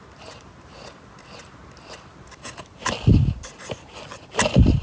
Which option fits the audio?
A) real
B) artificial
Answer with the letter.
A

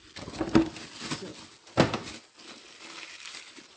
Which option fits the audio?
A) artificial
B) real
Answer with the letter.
B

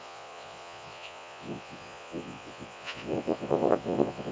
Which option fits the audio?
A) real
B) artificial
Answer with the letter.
B